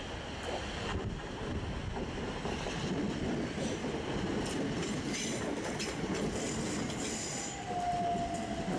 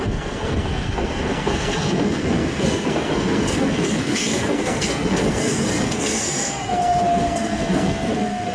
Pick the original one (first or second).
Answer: first